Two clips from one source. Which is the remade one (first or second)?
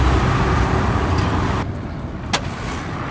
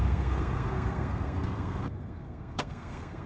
second